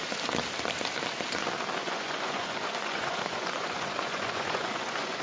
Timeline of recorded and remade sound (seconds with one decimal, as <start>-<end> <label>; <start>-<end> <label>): 0.0-1.8 recorded; 1.8-5.2 remade